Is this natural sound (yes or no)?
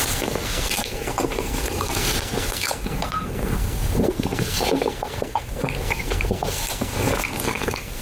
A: no